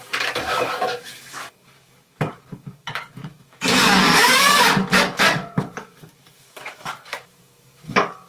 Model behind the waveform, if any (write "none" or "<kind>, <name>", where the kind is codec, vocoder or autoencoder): codec, DAC